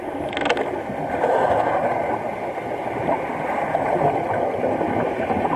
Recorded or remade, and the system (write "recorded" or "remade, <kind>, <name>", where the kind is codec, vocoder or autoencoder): recorded